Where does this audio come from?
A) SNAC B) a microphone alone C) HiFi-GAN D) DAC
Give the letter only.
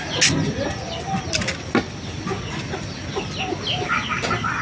B